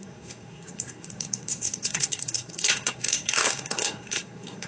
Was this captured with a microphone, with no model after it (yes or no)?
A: no